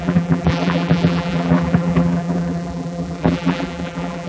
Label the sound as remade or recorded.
remade